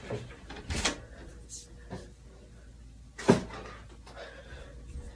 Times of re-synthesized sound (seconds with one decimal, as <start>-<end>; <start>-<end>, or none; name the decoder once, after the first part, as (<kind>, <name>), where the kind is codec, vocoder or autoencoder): none